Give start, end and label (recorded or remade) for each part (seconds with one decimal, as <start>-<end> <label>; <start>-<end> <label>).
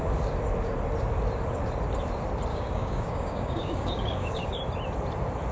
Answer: 0.0-2.5 recorded; 2.5-4.6 remade; 4.6-5.5 recorded